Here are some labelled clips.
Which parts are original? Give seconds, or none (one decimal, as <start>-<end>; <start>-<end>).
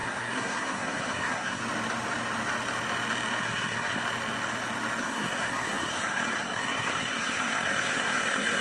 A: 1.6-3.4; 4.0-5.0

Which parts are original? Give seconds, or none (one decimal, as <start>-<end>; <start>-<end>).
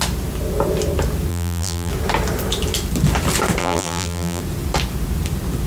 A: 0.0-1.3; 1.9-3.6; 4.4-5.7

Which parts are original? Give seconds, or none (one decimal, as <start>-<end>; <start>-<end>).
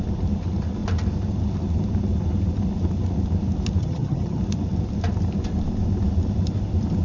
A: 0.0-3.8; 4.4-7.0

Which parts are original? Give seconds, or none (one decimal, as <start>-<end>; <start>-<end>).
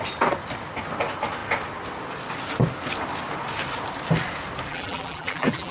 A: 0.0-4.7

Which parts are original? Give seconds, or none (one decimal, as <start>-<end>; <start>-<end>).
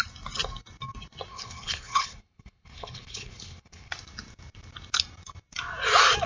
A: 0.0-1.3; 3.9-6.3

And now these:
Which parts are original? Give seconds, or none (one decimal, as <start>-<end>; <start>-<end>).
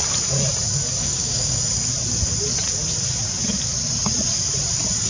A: 0.0-1.0; 1.6-5.1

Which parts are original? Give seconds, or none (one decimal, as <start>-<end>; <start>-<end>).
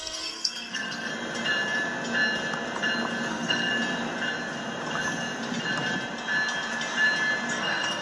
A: 1.1-3.3; 3.7-7.5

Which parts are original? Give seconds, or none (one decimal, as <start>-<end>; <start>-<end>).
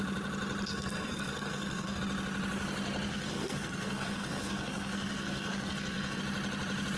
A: 0.0-0.7; 2.0-3.1; 6.2-7.0